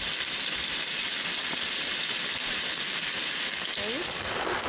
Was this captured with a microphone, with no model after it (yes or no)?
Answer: yes